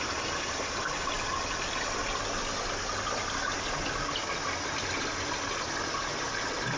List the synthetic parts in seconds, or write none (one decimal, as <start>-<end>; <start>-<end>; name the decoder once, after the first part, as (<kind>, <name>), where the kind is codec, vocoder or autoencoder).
none